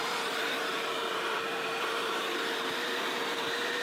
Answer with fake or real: fake